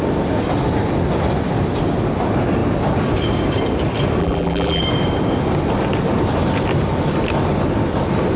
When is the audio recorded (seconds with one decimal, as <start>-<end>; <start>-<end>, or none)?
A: 0.0-4.2; 4.8-8.4